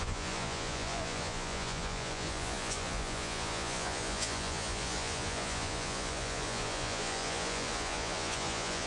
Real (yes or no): no